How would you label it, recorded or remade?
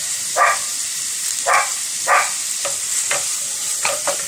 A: remade